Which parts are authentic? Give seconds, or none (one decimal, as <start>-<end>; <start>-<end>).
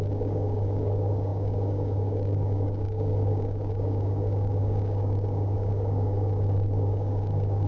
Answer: none